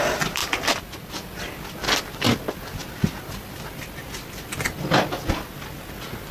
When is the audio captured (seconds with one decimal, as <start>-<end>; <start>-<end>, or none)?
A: 0.0-6.3

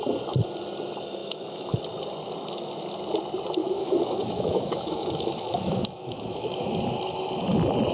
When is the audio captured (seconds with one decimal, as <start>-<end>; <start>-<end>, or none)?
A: 0.0-1.2; 1.8-3.6; 6.6-7.9